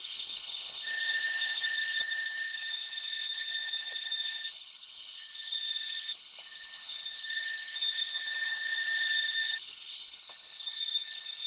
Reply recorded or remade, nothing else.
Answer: remade